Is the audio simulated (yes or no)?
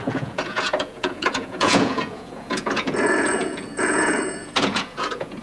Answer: yes